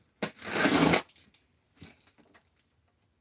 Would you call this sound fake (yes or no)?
no